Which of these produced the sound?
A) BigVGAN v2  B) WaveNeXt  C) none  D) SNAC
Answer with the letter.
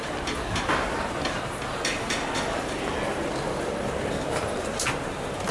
C